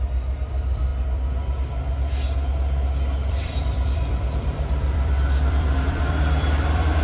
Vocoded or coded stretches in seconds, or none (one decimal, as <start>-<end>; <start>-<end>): 0.0-0.9; 3.3-7.0